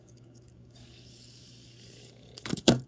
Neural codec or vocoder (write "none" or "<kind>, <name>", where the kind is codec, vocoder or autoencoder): codec, DAC